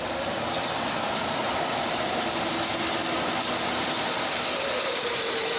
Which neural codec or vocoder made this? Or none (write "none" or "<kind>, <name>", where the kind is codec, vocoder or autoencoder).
none